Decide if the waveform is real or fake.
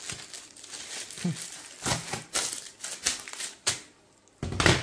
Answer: real